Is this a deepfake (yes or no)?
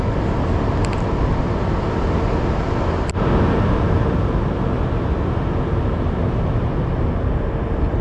no